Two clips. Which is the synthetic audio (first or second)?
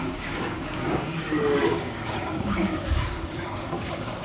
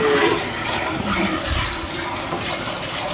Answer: first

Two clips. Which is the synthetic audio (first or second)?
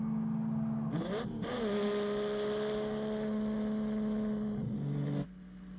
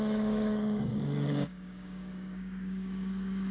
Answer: second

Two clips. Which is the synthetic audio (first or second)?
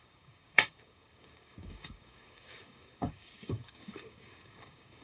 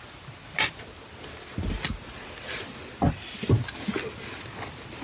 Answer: first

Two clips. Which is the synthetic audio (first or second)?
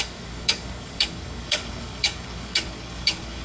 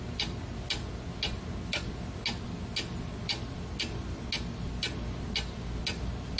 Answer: first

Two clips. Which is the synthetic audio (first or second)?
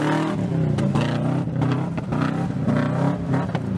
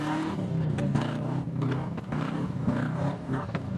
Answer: second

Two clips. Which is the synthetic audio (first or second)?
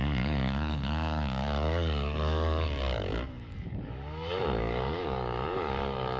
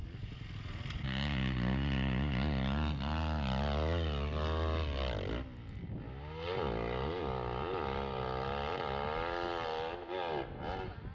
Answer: first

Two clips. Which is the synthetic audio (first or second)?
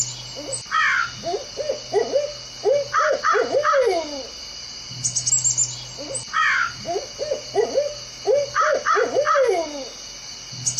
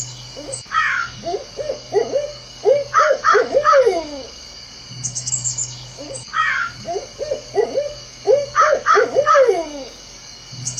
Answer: second